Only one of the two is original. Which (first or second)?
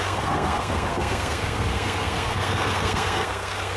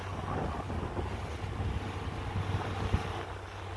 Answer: second